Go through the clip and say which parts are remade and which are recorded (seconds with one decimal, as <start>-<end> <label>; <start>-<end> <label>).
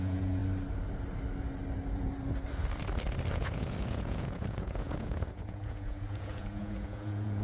0.0-0.4 remade; 0.4-3.3 recorded; 3.3-7.4 remade